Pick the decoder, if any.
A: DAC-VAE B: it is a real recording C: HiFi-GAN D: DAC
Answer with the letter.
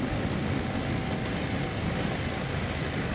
B